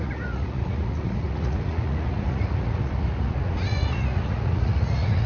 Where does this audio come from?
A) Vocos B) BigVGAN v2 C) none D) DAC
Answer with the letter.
A